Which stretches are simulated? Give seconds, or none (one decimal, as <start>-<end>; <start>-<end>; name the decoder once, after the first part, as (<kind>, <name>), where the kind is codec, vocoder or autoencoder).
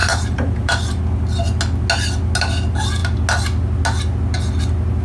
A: 0.0-1.0 (vocoder, BigVGAN v2)